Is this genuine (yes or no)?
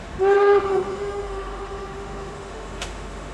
no